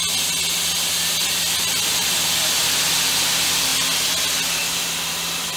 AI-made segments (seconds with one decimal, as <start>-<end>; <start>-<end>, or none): none